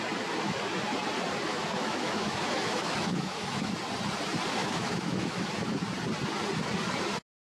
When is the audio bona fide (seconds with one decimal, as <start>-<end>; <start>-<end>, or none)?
0.0-1.5; 3.7-4.6; 5.5-7.6